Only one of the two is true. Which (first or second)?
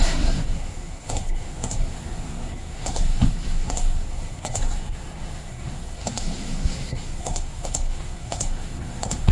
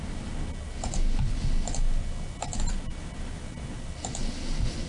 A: second